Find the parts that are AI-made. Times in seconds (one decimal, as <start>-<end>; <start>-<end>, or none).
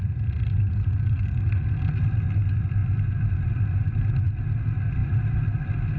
none